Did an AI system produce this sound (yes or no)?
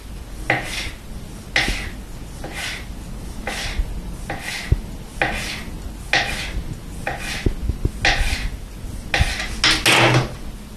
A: no